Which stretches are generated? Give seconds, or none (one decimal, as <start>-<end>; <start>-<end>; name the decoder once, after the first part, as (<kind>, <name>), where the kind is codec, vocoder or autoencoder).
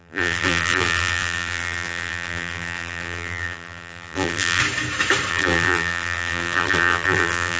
0.0-4.6 (vocoder, BigVGAN v2); 5.3-7.6